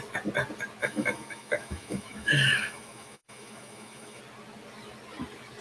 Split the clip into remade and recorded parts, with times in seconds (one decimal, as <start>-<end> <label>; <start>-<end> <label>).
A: 0.0-0.8 recorded; 0.8-4.2 remade; 4.2-5.6 recorded